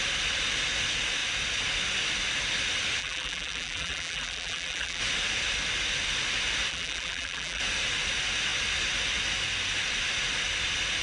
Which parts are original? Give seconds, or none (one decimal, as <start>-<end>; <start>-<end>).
0.0-3.0; 5.0-6.7; 7.6-11.0